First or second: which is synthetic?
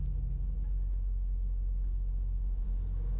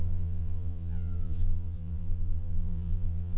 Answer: second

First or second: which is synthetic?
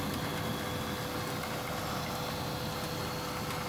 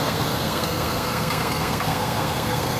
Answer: second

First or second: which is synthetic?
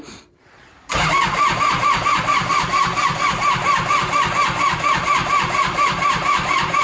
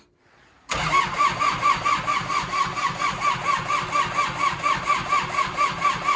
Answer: first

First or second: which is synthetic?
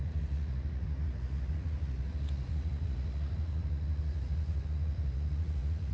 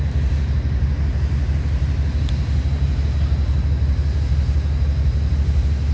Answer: first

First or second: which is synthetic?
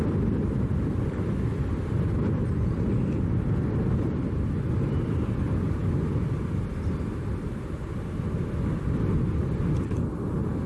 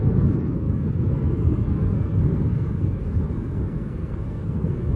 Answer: second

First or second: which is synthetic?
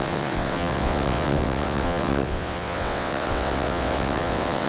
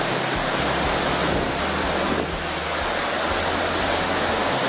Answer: first